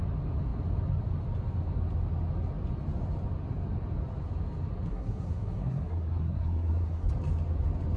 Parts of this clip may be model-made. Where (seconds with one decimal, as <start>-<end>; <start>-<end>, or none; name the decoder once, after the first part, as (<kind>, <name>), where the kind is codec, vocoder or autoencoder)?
4.9-7.1 (codec, SNAC)